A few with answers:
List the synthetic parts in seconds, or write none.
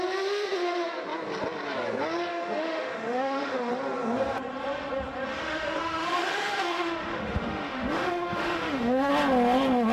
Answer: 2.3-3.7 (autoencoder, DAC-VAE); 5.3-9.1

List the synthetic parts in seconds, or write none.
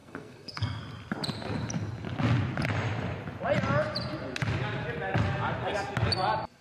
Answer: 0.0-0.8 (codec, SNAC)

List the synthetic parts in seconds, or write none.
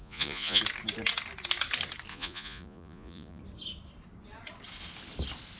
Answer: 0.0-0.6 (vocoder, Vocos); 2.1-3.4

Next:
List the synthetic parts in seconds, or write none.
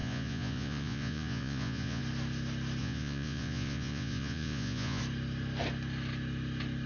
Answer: 0.0-2.0 (vocoder, Vocos); 2.8-5.0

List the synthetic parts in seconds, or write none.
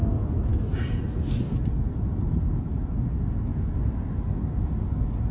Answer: 3.5-4.1 (vocoder, BigVGAN v2)